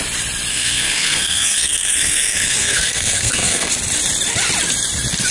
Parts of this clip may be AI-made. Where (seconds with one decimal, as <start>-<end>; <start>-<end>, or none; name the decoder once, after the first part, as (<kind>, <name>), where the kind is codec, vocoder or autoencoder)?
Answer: 0.5-3.7 (codec, SNAC)